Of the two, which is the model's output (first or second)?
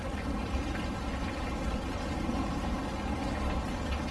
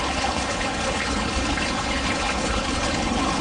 second